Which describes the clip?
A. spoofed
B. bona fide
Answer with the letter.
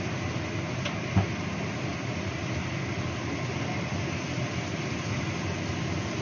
B